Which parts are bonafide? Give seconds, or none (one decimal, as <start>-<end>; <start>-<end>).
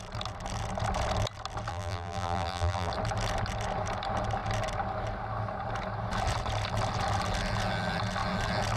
0.0-1.7; 2.9-8.8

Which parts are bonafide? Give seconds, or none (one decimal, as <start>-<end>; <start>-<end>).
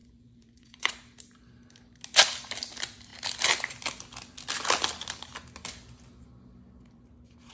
0.9-7.5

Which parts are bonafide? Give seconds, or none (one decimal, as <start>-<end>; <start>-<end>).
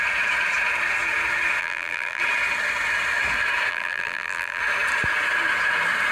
0.0-1.6; 2.2-3.7; 4.6-6.1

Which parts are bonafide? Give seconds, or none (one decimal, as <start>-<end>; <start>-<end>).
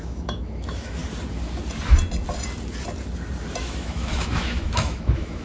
1.0-3.6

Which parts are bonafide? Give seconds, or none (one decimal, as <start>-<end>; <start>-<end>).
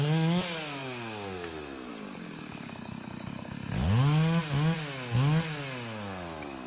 0.0-6.7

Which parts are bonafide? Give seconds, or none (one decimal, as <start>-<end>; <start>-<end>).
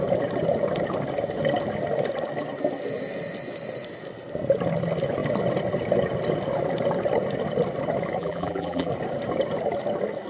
0.0-8.2; 8.9-10.3